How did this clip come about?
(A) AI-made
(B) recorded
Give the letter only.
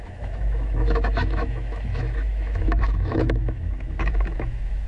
A